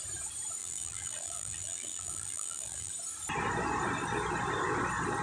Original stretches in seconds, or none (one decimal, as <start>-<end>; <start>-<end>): 0.0-0.6; 2.9-5.2

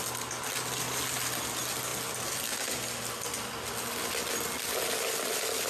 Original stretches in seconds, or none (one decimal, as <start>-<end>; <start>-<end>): 0.0-5.7

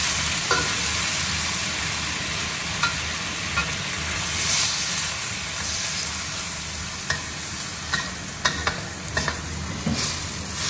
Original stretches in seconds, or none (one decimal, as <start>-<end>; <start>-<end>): 0.0-3.6; 6.1-10.7

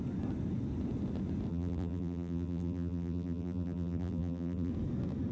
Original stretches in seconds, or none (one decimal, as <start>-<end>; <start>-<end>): 0.0-1.5; 4.7-5.3

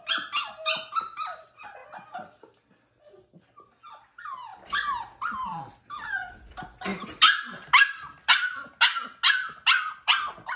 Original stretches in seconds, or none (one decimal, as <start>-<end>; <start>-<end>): 0.0-1.8; 2.7-10.6